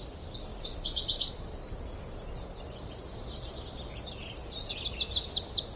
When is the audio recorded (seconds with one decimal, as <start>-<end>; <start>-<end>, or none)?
0.0-0.5; 4.0-5.8